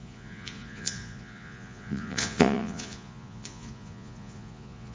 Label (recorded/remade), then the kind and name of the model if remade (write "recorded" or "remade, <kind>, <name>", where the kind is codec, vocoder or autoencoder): remade, vocoder, Vocos